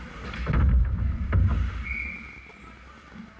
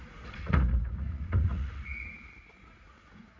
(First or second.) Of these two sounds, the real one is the first